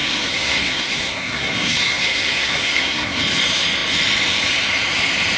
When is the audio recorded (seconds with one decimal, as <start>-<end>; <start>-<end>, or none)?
3.2-5.4